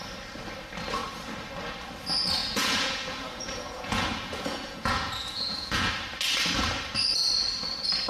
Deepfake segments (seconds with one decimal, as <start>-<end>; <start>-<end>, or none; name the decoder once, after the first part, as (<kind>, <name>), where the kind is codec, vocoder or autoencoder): 2.4-5.9 (vocoder, Vocos)